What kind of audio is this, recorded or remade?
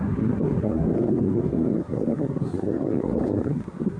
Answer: remade